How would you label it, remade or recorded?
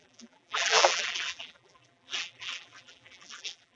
remade